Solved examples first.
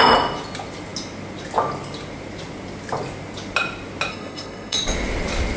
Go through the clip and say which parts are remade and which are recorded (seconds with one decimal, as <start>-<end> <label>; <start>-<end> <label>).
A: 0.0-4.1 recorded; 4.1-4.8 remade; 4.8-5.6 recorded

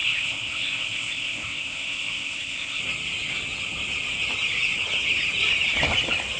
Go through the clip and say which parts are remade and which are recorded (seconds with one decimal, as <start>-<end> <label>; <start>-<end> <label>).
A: 0.0-2.8 remade; 2.8-6.4 recorded

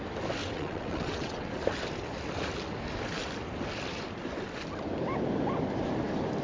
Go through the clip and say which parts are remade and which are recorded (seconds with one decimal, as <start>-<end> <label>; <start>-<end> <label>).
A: 0.0-0.4 recorded; 0.4-1.5 remade; 1.5-6.4 recorded

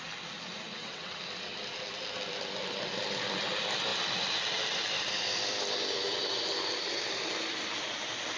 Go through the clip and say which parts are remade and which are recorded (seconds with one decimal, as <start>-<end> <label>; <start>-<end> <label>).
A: 0.0-0.7 recorded; 0.7-1.2 remade; 1.2-8.4 recorded